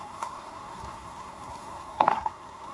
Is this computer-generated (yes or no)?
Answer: yes